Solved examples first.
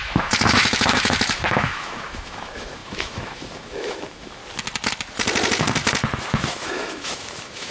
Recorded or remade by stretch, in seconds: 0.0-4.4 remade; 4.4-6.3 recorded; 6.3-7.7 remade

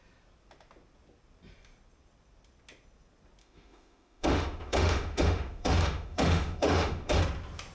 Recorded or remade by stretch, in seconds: 0.0-3.4 recorded; 3.4-7.2 remade; 7.2-7.7 recorded

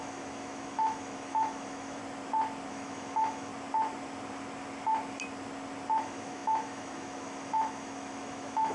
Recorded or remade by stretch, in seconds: 0.0-2.0 remade; 2.0-2.7 recorded; 2.7-3.5 remade; 3.5-6.0 recorded; 6.0-8.7 remade

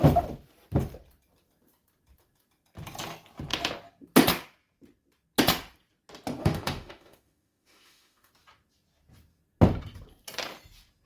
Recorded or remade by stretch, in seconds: 0.0-6.4 recorded; 6.4-8.3 remade; 8.3-11.1 recorded

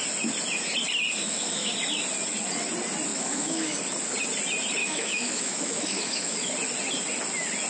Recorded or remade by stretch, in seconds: 0.0-1.2 recorded; 1.2-1.7 remade; 1.7-3.1 recorded; 3.1-3.8 remade; 3.8-4.8 recorded; 4.8-6.5 remade; 6.5-7.7 recorded

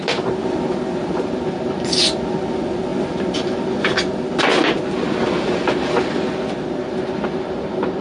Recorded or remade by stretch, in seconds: 0.0-8.0 recorded